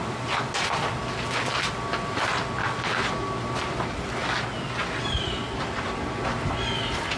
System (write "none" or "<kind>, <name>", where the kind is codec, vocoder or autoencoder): none